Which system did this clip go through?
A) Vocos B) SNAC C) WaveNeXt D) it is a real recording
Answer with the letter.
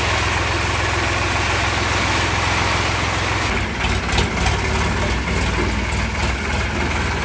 D